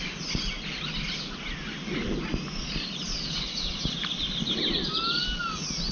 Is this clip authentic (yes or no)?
yes